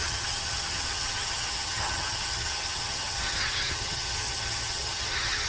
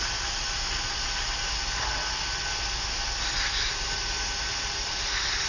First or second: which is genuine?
second